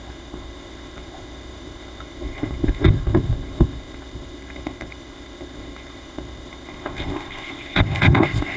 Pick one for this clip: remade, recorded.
remade